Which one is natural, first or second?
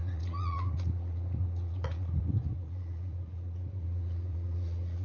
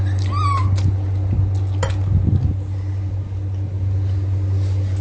second